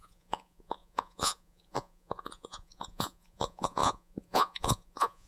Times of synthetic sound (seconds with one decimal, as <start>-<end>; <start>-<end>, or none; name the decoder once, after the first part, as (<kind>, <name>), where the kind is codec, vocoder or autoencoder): 0.0-5.3 (vocoder, Vocos)